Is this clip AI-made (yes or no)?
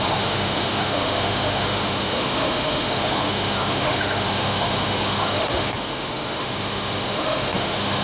yes